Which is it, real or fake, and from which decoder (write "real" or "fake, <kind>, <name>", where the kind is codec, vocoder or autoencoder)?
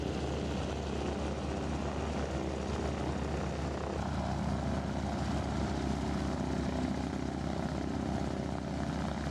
real